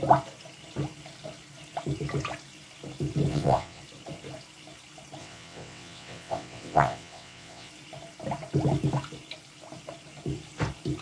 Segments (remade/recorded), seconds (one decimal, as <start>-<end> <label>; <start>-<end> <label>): 0.0-3.3 recorded; 3.3-3.8 remade; 3.8-5.2 recorded; 5.2-7.7 remade; 7.7-11.0 recorded